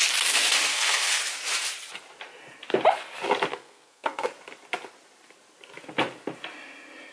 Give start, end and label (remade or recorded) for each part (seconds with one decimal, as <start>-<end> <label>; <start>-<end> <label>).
0.0-0.7 recorded; 0.7-1.2 remade; 1.2-3.5 recorded; 3.5-4.3 remade; 4.3-7.1 recorded